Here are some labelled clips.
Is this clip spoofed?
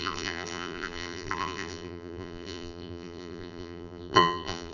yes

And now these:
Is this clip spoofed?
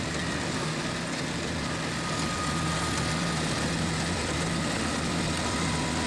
no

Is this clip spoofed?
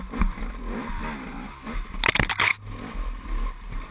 no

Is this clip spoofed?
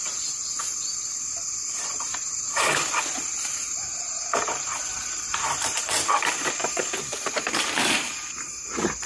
yes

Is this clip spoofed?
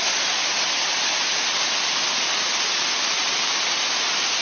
no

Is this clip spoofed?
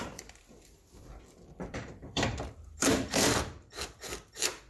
yes